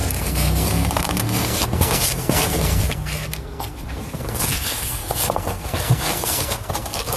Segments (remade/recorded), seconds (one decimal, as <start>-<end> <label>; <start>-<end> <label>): 0.0-7.2 remade